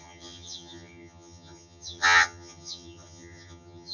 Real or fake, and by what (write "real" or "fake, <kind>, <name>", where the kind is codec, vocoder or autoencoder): fake, vocoder, HiFi-GAN